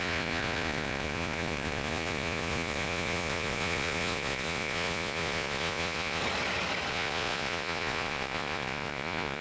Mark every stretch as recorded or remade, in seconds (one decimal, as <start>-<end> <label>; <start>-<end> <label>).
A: 0.0-6.2 remade; 6.2-6.9 recorded; 6.9-9.4 remade